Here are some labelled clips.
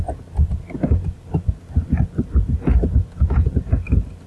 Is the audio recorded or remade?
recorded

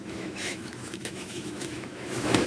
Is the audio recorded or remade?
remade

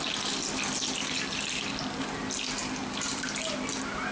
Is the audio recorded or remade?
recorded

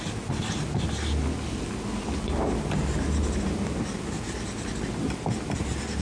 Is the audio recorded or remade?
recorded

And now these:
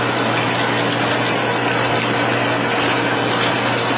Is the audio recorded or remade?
recorded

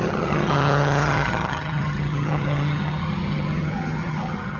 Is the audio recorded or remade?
remade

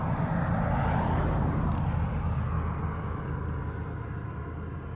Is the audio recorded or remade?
recorded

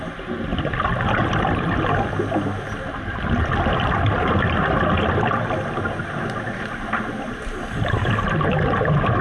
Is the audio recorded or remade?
recorded